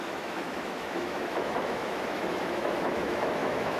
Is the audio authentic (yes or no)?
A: no